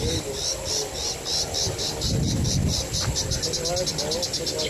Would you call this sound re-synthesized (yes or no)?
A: no